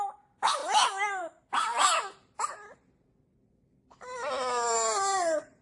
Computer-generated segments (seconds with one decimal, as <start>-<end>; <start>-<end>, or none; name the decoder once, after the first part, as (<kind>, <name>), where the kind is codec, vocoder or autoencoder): 0.0-0.6 (vocoder, BigVGAN v2); 1.2-1.7; 3.5-5.6